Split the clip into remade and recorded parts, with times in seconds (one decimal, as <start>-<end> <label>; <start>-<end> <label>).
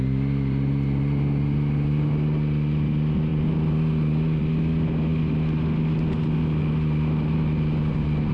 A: 0.0-8.3 recorded